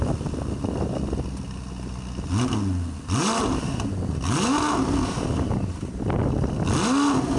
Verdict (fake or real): real